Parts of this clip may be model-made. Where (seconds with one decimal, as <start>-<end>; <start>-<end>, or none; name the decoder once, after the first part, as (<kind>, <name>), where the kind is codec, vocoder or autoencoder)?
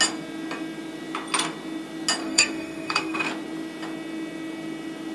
2.2-3.3 (codec, SNAC)